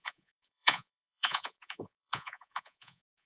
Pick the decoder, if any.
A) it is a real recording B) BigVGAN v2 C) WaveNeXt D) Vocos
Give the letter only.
D